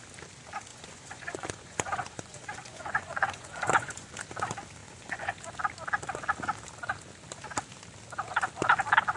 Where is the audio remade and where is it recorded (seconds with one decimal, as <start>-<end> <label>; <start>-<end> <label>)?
0.0-0.7 recorded; 0.7-4.1 remade; 4.1-4.8 recorded; 4.8-5.4 remade; 5.4-9.2 recorded